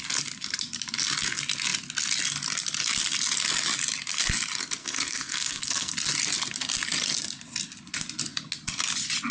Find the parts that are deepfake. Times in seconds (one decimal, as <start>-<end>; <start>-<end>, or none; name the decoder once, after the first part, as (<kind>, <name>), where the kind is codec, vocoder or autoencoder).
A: 4.8-5.9 (codec, SNAC)